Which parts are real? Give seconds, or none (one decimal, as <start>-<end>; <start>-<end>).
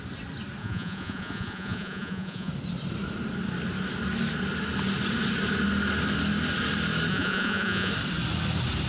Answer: 0.0-0.6; 2.5-7.1; 7.9-8.9